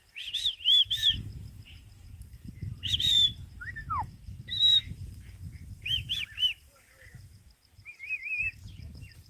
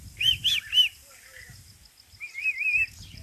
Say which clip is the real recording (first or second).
second